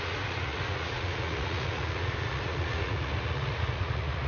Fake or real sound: fake